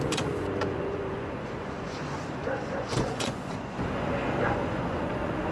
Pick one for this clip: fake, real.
fake